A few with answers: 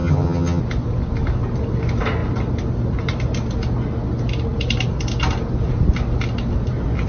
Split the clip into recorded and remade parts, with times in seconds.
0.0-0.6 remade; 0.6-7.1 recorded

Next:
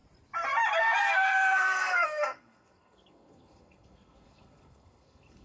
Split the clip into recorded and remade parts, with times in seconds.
0.0-0.7 recorded; 0.7-5.4 remade

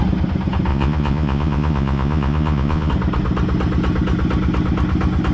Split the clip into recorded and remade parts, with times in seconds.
0.0-0.7 recorded; 0.7-2.9 remade; 2.9-5.3 recorded

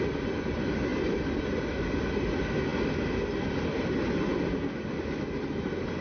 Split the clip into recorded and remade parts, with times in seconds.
0.0-6.0 recorded

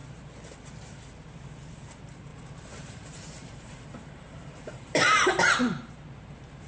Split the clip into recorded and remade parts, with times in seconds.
0.0-2.3 recorded; 2.3-5.4 remade; 5.4-6.7 recorded

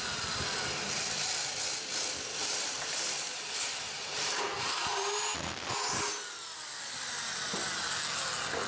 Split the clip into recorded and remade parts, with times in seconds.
0.0-2.4 recorded; 2.4-5.1 remade; 5.1-8.7 recorded